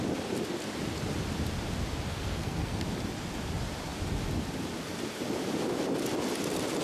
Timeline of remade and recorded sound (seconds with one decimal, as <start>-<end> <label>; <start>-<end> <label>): 0.0-2.1 recorded; 2.1-2.8 remade; 2.8-6.8 recorded